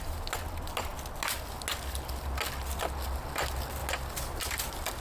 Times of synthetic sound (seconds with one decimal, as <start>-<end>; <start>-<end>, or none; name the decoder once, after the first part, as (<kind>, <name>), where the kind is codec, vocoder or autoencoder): none